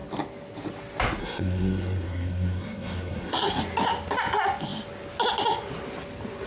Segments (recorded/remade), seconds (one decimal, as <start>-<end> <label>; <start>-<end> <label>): 0.0-1.2 recorded; 1.2-3.6 remade; 3.6-6.5 recorded